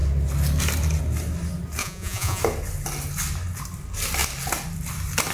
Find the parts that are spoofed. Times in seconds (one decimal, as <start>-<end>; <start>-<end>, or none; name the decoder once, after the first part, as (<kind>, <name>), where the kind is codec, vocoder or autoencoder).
1.8-2.4 (vocoder, Vocos)